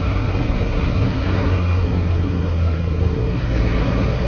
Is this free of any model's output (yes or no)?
no